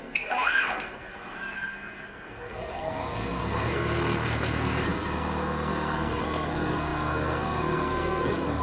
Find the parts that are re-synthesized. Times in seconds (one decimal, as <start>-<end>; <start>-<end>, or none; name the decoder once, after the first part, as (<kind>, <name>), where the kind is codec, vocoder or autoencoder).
0.0-8.6 (codec, SNAC)